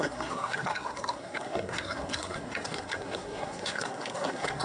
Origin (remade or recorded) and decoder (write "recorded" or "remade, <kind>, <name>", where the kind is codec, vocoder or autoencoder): remade, codec, SNAC